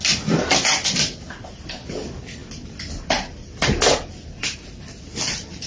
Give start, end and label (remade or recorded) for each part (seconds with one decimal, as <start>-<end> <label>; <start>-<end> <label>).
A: 0.0-5.7 recorded